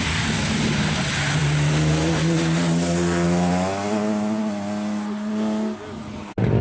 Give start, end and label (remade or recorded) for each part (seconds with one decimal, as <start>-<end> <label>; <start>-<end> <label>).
0.0-6.6 recorded